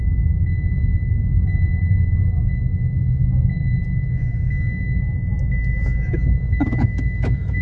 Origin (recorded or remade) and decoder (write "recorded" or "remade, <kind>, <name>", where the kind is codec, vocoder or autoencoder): remade, autoencoder, DAC-VAE